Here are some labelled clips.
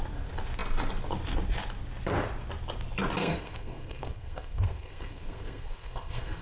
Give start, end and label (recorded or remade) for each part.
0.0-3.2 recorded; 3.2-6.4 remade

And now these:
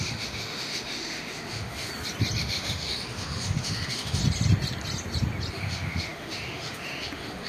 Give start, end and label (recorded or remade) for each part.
0.0-1.9 remade; 1.9-2.4 recorded; 2.4-4.2 remade; 4.2-5.5 recorded; 5.5-7.5 remade